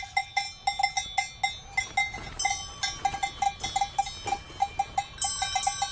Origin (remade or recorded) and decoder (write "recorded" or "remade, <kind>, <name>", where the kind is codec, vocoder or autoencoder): recorded